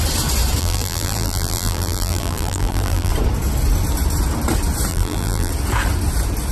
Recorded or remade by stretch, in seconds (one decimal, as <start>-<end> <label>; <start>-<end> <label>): 0.0-0.6 recorded; 0.6-3.1 remade; 3.1-4.9 recorded; 4.9-5.5 remade; 5.5-6.5 recorded